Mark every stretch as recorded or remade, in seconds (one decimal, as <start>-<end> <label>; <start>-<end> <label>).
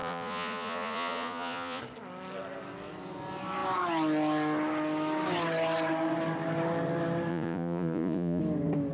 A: 0.0-1.8 remade; 1.8-7.3 recorded; 7.3-8.4 remade; 8.4-8.9 recorded